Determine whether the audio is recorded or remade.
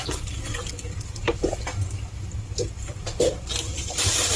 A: recorded